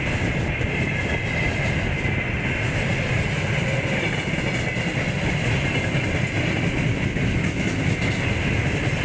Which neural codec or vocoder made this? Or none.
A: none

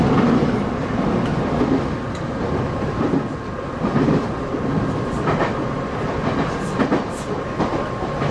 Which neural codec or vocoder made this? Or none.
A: none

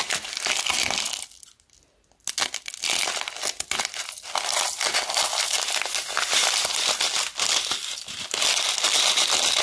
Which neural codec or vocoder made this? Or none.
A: none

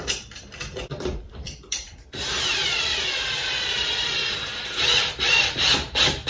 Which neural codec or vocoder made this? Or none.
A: vocoder, BigVGAN v2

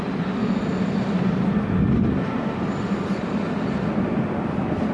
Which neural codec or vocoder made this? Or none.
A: none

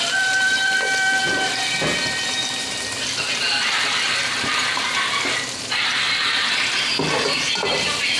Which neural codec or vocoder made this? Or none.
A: vocoder, BigVGAN v2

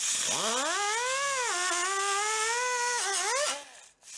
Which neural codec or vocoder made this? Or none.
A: none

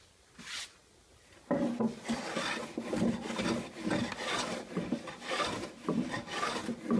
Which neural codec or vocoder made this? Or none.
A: none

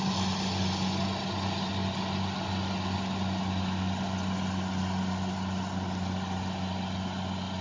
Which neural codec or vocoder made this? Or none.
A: none